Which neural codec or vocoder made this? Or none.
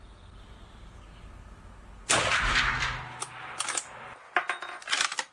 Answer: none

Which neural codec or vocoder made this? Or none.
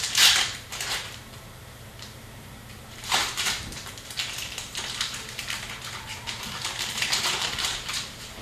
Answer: vocoder, BigVGAN v2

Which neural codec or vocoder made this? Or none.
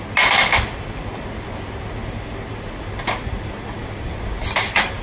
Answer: none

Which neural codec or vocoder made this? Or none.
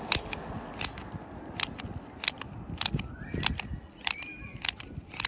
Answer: none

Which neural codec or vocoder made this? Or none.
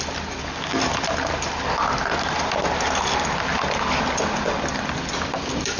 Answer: none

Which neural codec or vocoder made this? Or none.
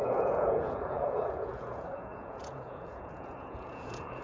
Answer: vocoder, Vocos